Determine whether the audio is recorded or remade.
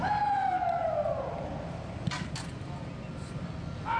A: recorded